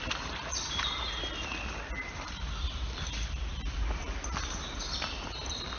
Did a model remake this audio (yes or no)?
yes